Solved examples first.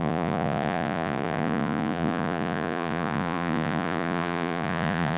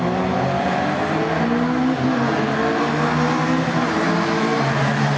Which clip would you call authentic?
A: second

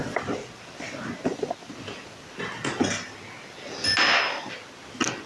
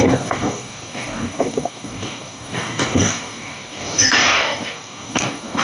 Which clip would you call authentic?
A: first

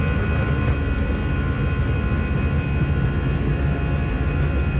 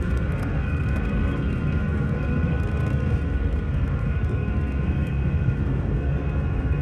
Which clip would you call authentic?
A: first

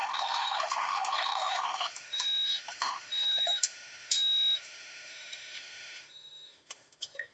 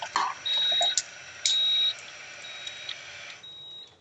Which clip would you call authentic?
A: second